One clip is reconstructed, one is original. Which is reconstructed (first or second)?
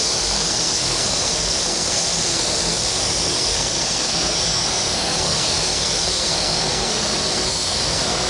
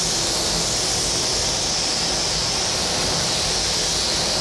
first